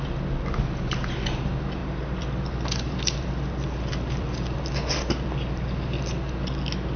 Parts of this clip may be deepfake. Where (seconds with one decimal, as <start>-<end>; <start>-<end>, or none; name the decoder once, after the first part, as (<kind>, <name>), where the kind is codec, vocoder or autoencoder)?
1.8-6.0 (vocoder, BigVGAN v2)